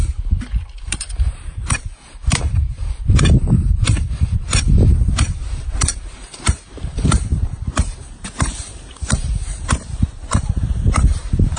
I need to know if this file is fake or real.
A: fake